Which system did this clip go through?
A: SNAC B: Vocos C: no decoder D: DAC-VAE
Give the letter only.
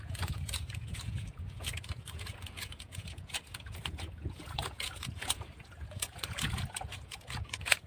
B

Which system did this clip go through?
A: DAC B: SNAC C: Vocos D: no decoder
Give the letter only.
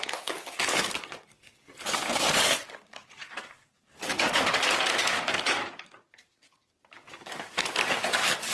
A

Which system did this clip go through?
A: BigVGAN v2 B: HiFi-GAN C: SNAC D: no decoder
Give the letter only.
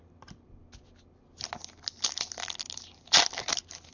D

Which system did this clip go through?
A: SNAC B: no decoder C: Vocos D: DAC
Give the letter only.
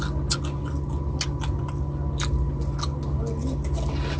B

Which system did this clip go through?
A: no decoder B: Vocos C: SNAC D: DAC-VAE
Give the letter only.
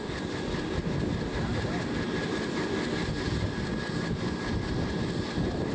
A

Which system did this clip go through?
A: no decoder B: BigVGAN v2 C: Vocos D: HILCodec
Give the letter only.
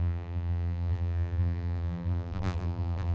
B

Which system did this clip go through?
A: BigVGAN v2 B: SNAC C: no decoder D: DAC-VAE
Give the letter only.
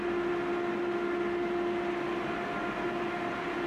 C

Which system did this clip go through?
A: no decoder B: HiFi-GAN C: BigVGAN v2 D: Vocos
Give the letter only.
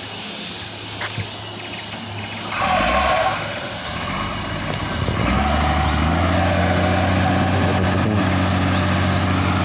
A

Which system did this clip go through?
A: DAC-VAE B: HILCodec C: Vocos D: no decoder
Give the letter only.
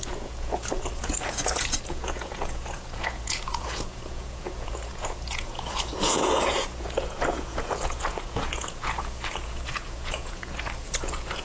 C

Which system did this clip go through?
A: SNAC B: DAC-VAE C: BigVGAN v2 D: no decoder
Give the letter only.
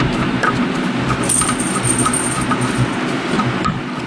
D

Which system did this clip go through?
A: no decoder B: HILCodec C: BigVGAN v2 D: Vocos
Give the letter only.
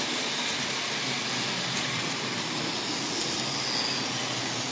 A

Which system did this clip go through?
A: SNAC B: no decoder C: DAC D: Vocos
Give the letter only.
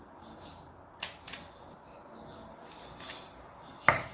B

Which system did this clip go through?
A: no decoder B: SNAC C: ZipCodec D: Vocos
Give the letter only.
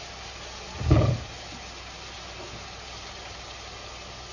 A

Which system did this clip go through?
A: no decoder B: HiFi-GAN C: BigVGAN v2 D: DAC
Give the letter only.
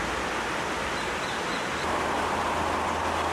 A